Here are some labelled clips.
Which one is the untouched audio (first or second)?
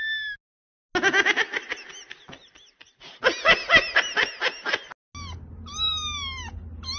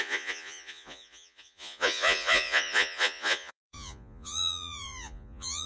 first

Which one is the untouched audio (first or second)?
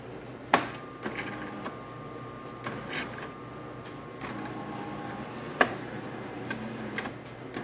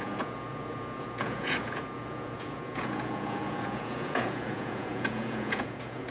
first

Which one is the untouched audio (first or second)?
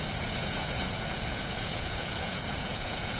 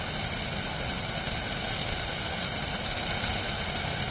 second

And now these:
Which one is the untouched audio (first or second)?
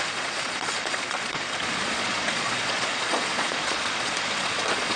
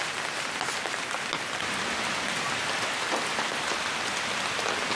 second